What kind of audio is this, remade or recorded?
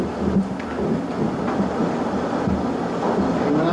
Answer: recorded